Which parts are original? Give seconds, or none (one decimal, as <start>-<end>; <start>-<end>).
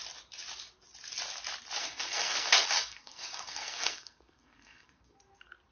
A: 0.0-1.8; 5.2-5.7